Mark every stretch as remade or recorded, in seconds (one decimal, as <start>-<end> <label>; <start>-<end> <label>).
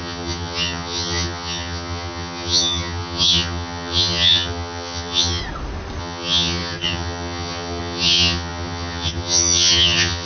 0.0-5.4 remade; 5.4-6.0 recorded; 6.0-10.3 remade